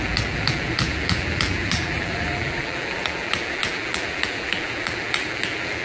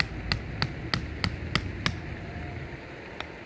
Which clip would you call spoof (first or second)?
first